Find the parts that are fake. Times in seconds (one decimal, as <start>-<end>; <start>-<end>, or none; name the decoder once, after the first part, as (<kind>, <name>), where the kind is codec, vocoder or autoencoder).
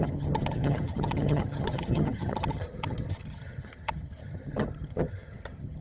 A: 0.0-5.8 (vocoder, HiFi-GAN)